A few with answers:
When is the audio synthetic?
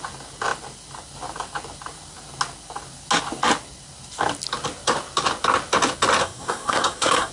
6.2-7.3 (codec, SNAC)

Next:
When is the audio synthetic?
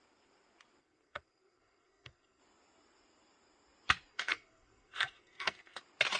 0.8-2.4 (codec, SNAC); 4.1-5.8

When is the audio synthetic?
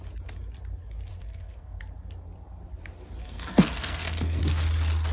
1.1-1.8 (codec, SNAC); 3.2-4.4